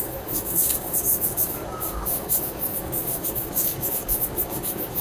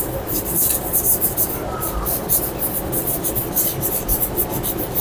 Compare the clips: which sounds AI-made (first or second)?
first